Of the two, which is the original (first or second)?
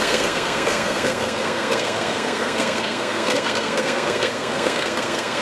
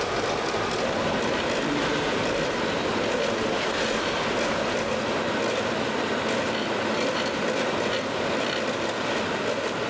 second